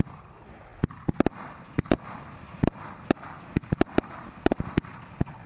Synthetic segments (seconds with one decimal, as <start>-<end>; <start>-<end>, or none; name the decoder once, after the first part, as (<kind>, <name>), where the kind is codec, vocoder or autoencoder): none